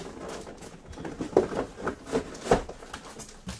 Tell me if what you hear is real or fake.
real